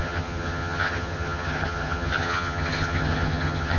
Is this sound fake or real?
fake